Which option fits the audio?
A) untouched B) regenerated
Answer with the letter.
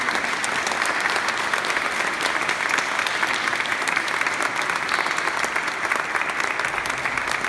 A